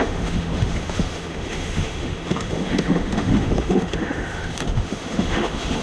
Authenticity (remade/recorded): remade